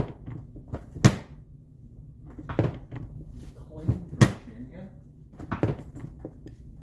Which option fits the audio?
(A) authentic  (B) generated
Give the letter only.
A